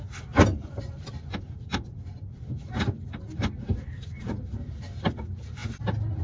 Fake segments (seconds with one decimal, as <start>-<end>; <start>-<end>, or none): 0.5-4.2